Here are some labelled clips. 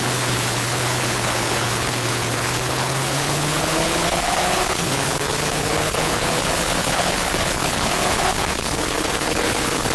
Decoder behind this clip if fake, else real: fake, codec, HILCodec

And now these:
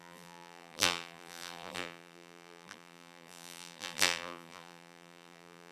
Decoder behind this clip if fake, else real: fake, vocoder, BigVGAN v2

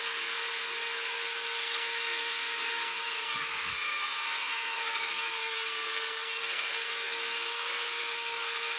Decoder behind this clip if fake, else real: fake, codec, SNAC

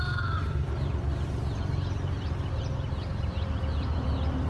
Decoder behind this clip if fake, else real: fake, vocoder, BigVGAN v2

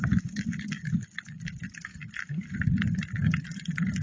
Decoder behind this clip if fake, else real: real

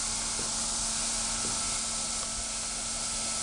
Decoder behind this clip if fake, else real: real